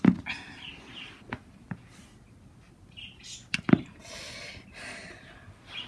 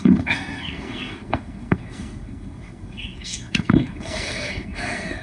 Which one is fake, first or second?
second